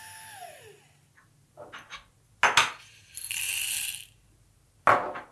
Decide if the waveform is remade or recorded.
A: recorded